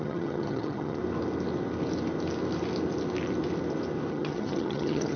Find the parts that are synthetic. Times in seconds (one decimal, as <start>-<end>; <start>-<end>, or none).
0.0-1.0; 4.1-5.2